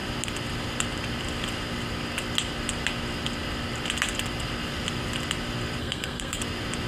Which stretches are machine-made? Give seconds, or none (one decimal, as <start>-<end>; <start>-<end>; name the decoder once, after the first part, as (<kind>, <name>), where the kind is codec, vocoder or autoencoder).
5.8-6.4 (codec, SNAC)